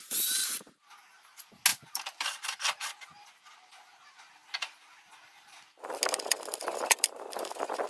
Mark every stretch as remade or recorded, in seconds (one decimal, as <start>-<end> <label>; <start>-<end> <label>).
0.0-1.7 recorded; 1.7-2.8 remade; 2.8-4.4 recorded; 4.4-6.0 remade; 6.0-6.5 recorded; 6.5-7.5 remade; 7.5-7.9 recorded